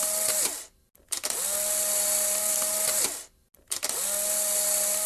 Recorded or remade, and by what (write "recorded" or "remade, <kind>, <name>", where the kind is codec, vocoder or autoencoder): recorded